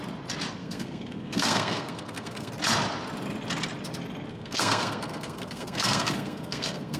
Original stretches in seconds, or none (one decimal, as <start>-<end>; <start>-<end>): 0.0-0.6; 2.5-4.3